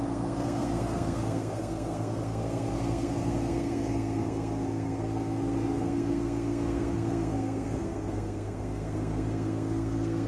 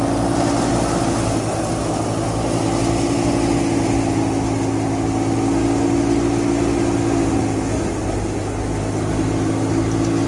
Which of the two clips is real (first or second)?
second